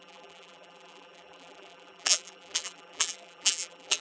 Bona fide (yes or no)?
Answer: no